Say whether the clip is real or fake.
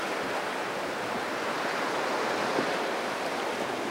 real